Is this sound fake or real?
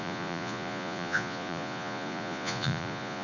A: fake